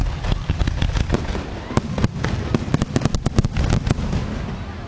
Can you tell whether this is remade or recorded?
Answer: recorded